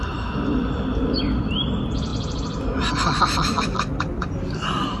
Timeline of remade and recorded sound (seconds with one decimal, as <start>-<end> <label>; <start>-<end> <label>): 0.0-5.0 recorded